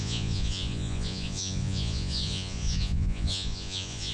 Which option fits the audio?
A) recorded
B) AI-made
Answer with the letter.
B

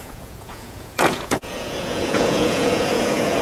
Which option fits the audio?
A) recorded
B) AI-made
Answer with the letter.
B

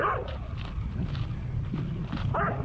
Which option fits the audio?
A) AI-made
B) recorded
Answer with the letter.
B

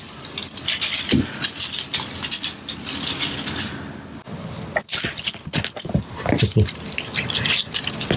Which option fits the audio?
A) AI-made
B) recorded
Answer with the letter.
B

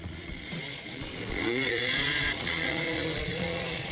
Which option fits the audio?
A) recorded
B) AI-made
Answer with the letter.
B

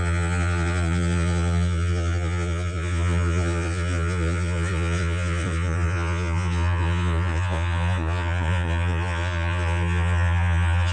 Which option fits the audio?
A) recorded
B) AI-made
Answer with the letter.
B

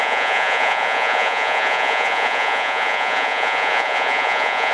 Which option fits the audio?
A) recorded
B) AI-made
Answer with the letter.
B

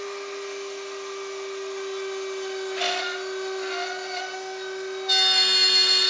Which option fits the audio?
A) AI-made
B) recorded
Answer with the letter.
B